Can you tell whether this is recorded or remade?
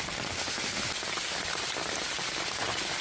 recorded